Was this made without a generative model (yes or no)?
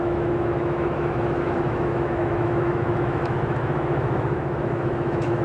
no